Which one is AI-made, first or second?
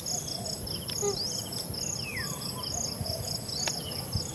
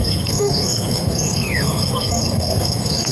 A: second